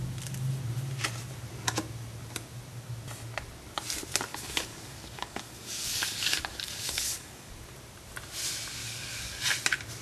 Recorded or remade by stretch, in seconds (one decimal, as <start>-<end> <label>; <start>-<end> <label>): 0.0-4.3 recorded; 4.3-7.5 remade; 7.5-8.8 recorded; 8.8-9.4 remade; 9.4-10.0 recorded